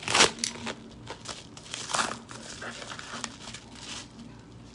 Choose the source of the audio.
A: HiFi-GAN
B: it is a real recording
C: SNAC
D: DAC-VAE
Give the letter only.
B